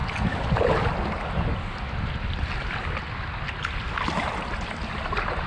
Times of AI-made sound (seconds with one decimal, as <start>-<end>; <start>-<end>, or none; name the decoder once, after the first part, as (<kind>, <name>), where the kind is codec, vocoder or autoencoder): none